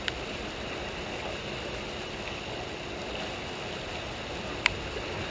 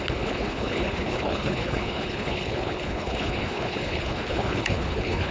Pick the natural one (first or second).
first